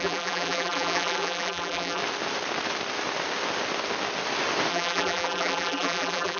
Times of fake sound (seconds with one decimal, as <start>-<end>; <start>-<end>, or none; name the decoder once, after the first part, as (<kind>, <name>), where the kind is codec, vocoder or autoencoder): 0.0-2.0 (vocoder, BigVGAN v2); 4.7-6.4